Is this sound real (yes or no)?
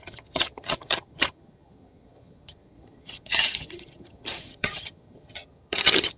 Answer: no